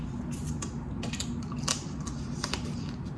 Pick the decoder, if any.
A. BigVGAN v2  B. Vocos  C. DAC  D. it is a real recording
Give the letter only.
D